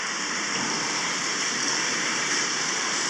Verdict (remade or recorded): remade